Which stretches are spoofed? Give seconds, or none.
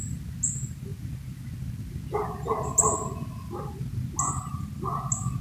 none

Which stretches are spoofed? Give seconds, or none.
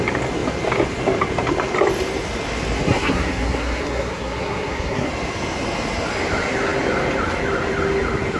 2.9-5.1 (codec, SNAC)